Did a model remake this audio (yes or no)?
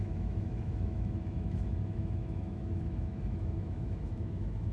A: yes